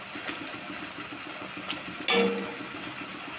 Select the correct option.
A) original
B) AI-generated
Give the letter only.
A